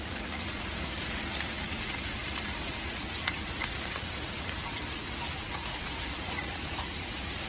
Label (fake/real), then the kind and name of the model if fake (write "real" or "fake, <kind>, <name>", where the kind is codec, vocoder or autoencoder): fake, vocoder, Vocos